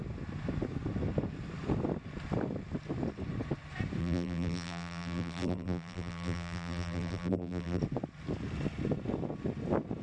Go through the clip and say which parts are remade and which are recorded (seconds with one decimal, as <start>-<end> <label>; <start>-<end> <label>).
0.0-4.0 recorded; 4.0-7.8 remade; 7.8-10.0 recorded

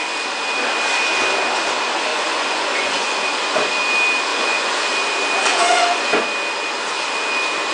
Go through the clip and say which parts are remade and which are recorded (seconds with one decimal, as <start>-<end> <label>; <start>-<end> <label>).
0.0-2.1 recorded; 2.1-3.7 remade; 3.7-4.3 recorded; 4.3-4.9 remade; 4.9-5.5 recorded; 5.5-6.2 remade; 6.2-7.7 recorded

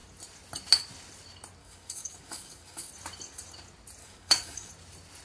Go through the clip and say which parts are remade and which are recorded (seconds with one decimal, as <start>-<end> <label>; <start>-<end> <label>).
0.0-1.6 recorded; 1.6-2.9 remade; 2.9-4.0 recorded; 4.0-4.7 remade; 4.7-5.2 recorded

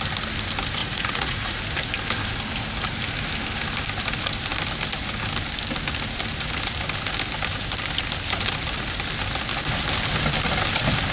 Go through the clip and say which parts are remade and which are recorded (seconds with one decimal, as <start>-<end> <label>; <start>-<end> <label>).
0.0-0.8 recorded; 0.8-1.6 remade; 1.6-11.1 recorded

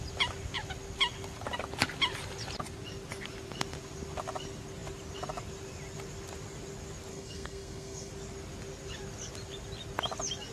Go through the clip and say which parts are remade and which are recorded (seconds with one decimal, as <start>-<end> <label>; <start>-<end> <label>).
0.0-7.1 recorded; 7.1-8.1 remade; 8.1-10.5 recorded